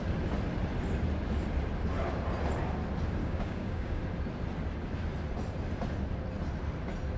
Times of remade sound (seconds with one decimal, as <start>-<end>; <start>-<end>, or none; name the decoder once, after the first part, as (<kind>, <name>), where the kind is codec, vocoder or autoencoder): 3.2-4.0 (codec, DAC)